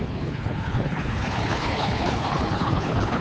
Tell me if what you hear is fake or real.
fake